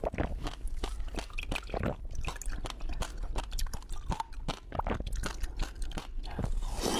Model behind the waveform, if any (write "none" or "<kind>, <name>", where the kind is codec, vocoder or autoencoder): none